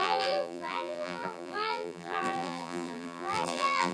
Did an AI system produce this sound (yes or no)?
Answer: yes